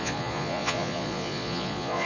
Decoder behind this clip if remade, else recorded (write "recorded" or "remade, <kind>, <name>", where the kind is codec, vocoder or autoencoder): remade, vocoder, Vocos